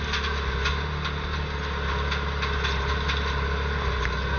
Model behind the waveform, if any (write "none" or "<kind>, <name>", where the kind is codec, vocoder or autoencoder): none